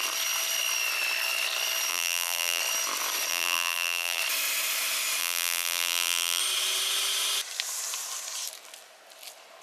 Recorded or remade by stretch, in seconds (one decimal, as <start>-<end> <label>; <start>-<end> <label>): 0.0-1.9 recorded; 1.9-2.6 remade; 2.6-3.3 recorded; 3.3-4.2 remade; 4.2-5.2 recorded; 5.2-6.4 remade; 6.4-9.6 recorded